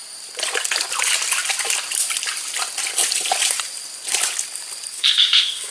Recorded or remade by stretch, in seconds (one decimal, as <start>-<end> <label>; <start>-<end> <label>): 0.0-4.9 recorded; 4.9-5.7 remade